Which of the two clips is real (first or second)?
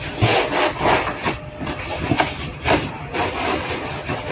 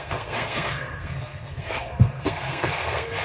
first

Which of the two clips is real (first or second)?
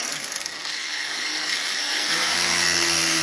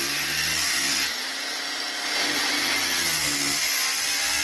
second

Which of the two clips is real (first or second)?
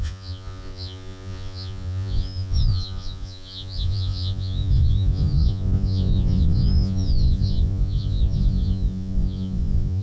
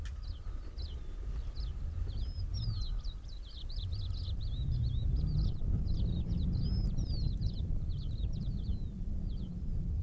second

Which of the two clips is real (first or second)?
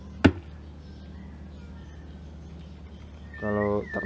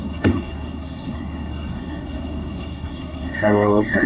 first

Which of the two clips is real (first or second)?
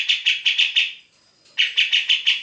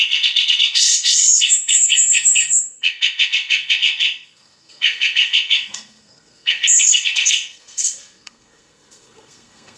first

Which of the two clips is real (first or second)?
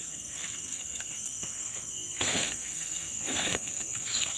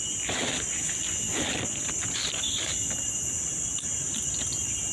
second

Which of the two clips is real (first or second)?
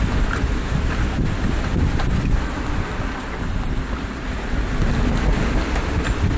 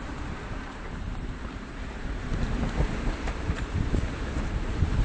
first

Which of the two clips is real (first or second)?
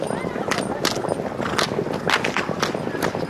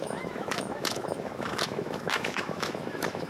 first